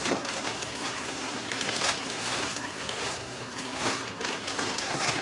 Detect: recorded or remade remade